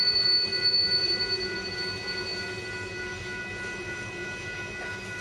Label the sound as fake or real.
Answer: real